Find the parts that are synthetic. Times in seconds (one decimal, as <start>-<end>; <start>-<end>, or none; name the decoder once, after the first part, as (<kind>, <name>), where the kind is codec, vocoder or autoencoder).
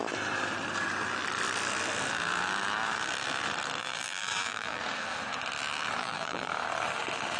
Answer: 3.8-4.8 (vocoder, BigVGAN v2); 6.0-6.5